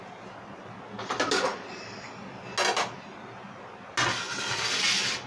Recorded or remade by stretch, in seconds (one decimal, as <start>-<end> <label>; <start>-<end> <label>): 0.0-5.3 recorded